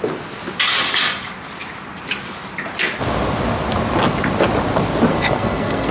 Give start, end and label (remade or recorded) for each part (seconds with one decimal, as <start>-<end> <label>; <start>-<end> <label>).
0.0-5.1 recorded; 5.1-5.9 remade